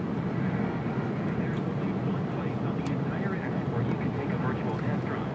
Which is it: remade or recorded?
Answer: recorded